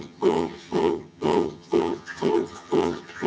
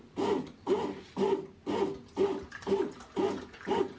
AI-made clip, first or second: first